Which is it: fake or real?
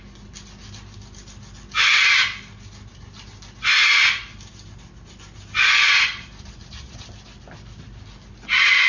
real